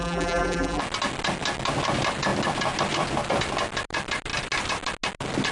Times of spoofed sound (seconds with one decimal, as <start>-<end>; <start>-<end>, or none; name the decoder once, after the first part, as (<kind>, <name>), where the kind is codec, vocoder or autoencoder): 0.0-0.8 (vocoder, BigVGAN v2)